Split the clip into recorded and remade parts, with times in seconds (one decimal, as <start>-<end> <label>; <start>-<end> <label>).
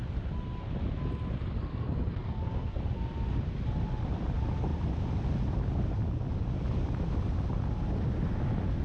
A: 0.0-1.7 recorded; 1.7-2.8 remade; 2.8-8.8 recorded